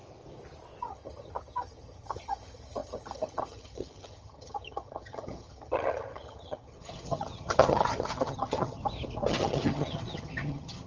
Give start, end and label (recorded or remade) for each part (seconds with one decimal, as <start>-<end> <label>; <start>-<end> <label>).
0.0-0.8 recorded; 0.8-8.8 remade; 8.8-9.3 recorded; 9.3-10.9 remade